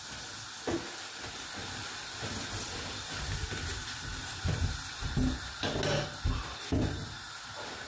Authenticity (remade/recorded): recorded